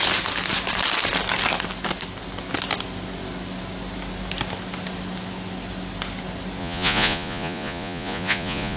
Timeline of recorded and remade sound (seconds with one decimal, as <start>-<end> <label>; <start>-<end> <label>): 0.0-6.6 recorded; 6.6-8.8 remade